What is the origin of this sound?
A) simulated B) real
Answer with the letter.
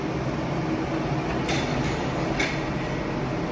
B